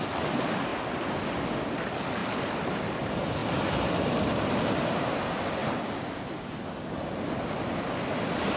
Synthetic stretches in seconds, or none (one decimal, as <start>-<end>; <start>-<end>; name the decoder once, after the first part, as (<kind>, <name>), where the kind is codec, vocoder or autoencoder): 2.2-3.0 (vocoder, BigVGAN v2); 3.4-4.7